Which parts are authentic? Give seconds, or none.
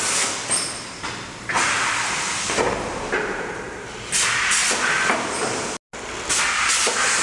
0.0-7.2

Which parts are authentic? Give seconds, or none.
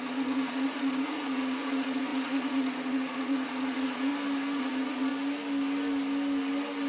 4.1-4.6; 5.1-6.9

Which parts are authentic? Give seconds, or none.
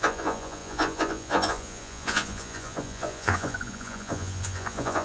none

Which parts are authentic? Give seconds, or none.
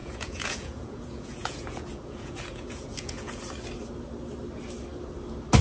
3.4-5.6